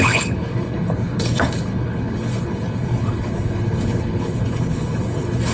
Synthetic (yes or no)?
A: yes